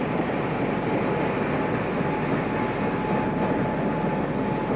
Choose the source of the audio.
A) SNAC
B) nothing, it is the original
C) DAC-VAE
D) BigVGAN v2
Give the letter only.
B